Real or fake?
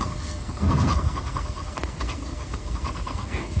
fake